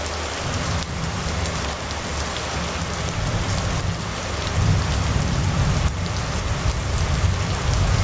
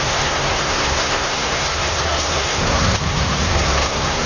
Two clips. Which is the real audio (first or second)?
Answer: first